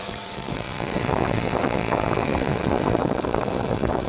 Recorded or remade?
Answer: remade